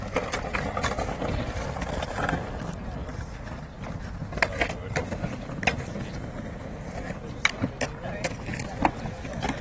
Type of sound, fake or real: real